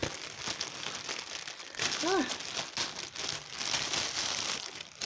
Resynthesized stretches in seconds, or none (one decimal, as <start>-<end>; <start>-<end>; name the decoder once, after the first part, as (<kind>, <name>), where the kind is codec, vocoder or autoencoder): none